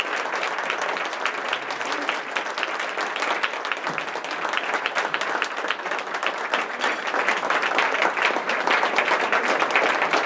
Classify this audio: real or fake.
real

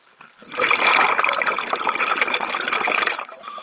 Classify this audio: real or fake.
real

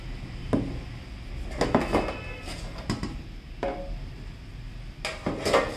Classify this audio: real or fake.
real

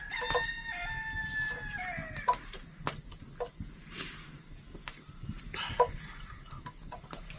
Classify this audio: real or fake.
real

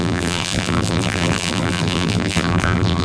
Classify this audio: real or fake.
fake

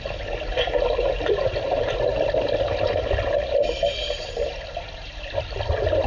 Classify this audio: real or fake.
real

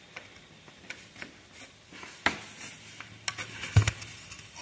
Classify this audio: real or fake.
real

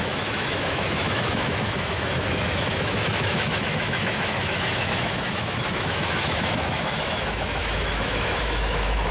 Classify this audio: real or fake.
fake